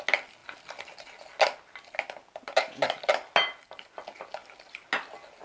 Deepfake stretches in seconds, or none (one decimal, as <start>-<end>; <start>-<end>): none